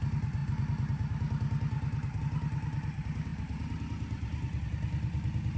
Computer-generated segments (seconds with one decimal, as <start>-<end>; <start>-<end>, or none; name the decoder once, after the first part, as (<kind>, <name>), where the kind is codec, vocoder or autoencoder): none